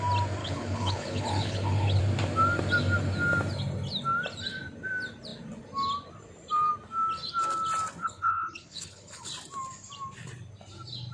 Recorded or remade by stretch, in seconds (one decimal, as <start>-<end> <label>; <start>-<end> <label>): 0.0-0.4 recorded; 0.4-2.0 remade; 2.0-8.0 recorded; 8.0-9.3 remade; 9.3-11.1 recorded